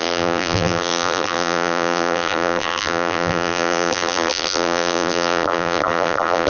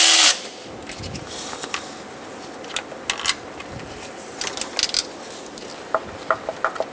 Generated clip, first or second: first